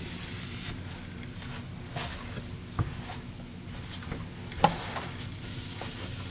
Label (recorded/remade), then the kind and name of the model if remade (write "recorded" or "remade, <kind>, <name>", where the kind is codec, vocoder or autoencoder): recorded